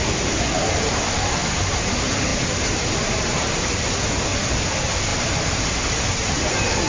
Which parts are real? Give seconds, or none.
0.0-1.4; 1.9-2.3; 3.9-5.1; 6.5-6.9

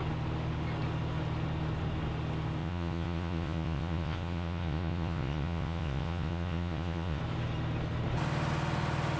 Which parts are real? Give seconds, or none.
0.0-2.6; 7.2-9.2